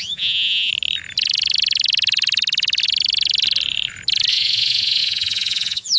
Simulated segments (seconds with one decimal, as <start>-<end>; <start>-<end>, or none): 0.0-0.7; 4.3-6.0